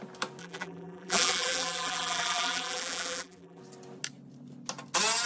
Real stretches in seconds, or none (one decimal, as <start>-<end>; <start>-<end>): 0.0-0.4; 3.6-5.3